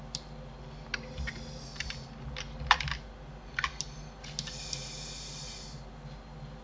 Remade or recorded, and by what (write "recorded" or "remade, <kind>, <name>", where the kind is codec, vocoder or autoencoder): recorded